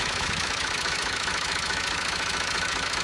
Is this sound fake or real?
fake